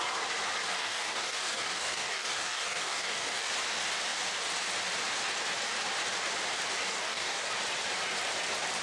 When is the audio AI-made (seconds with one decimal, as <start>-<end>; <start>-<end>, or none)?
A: 0.7-3.5; 6.9-7.5